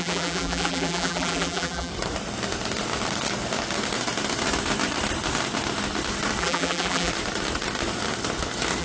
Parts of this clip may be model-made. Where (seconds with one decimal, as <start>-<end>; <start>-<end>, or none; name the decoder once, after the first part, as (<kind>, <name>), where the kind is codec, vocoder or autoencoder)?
0.0-1.9 (vocoder, BigVGAN v2); 6.4-7.1